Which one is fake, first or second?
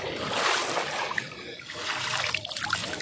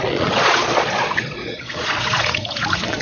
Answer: second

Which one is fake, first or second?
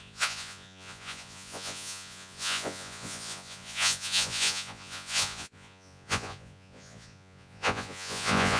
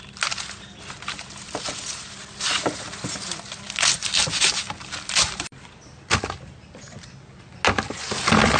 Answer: first